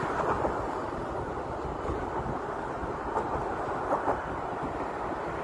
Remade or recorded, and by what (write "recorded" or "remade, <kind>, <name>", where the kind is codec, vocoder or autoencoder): recorded